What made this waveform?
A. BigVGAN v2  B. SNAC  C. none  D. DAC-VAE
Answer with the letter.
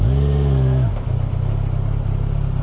C